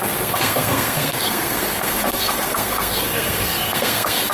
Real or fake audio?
fake